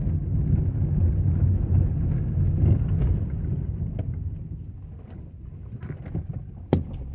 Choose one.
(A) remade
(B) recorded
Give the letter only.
B